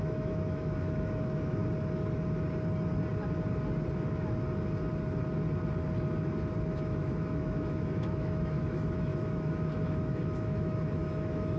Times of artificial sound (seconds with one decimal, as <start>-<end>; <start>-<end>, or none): 0.0-1.6; 6.8-11.6